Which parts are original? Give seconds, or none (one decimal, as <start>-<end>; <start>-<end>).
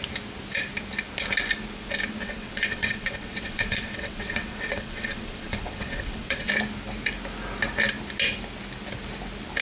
0.0-2.2; 6.5-9.6